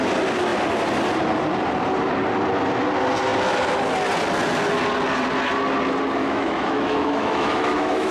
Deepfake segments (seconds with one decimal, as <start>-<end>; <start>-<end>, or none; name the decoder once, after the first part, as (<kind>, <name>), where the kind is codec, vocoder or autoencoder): 6.2-8.1 (autoencoder, DAC-VAE)